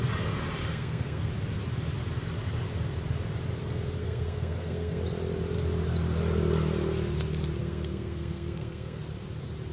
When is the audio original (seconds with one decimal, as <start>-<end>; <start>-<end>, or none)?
0.0-0.7; 1.3-4.0; 5.0-7.6; 9.0-9.7